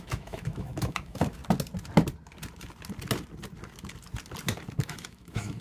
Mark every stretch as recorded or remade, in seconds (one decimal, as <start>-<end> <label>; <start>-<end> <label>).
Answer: 0.0-1.4 remade; 1.4-4.8 recorded; 4.8-5.6 remade